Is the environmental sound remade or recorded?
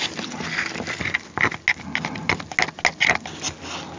recorded